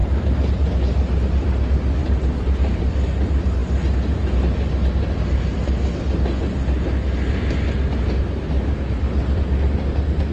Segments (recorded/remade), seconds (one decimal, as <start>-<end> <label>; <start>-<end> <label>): 0.0-0.6 remade; 0.6-2.0 recorded; 2.0-2.9 remade; 2.9-10.3 recorded